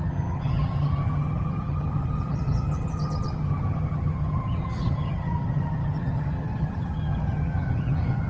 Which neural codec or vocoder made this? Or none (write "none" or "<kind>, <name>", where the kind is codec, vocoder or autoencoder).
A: vocoder, HiFi-GAN